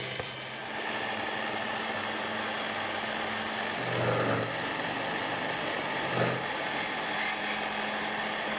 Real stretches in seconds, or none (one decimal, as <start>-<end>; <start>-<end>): 0.0-8.6